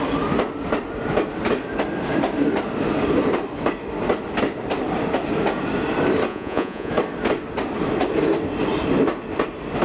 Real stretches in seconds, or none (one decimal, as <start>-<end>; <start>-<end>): 0.0-6.3; 6.9-9.8